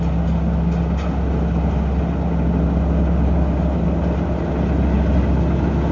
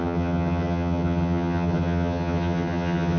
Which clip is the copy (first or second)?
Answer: second